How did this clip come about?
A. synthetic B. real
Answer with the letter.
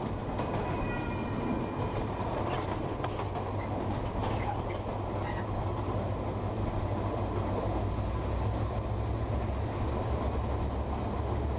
B